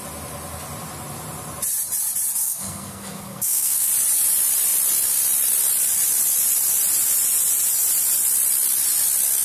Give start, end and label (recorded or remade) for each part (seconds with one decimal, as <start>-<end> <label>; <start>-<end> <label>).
0.0-2.4 recorded; 2.4-3.9 remade; 3.9-9.4 recorded